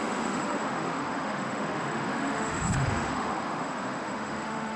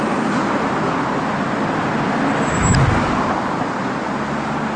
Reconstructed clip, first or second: first